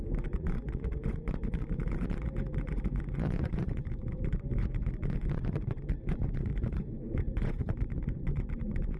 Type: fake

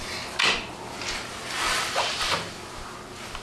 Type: real